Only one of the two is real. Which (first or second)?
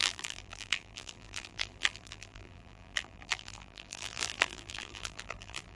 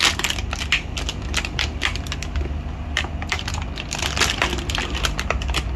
second